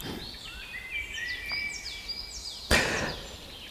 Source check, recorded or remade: recorded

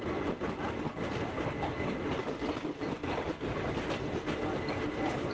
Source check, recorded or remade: recorded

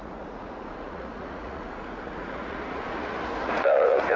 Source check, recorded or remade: remade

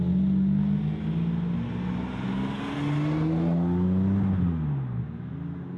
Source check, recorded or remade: recorded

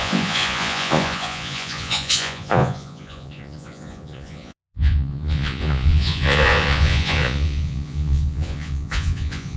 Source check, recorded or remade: remade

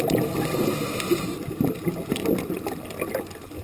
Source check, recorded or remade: recorded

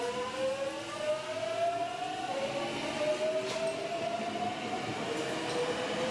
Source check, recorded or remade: recorded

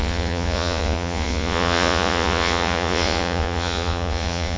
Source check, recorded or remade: remade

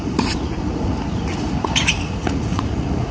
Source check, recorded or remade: remade